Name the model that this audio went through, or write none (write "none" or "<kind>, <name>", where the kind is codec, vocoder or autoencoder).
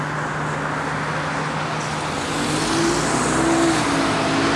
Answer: none